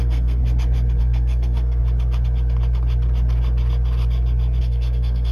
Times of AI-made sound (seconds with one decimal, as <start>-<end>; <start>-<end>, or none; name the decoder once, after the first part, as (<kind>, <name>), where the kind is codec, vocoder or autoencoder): 0.0-0.4 (codec, SNAC); 1.0-1.8; 4.6-5.3